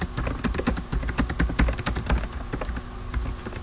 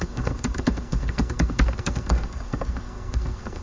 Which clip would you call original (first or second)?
first